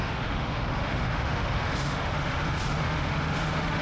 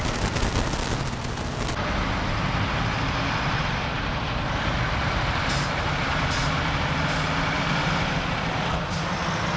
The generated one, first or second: first